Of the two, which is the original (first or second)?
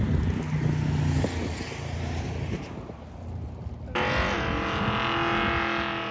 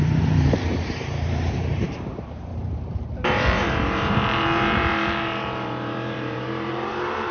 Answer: first